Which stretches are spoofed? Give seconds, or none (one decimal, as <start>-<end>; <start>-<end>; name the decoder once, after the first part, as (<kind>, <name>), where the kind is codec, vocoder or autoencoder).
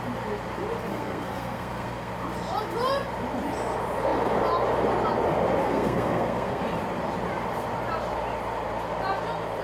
0.9-2.1 (codec, SNAC); 5.6-6.6